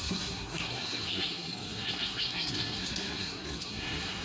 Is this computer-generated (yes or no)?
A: yes